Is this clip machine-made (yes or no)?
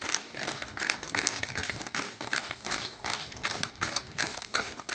yes